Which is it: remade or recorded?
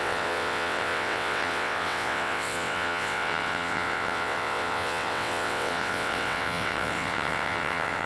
remade